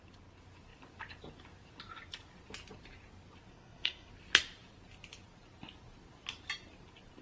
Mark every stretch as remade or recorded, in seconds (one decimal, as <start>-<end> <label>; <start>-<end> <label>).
0.0-3.5 recorded; 3.5-4.1 remade; 4.1-7.2 recorded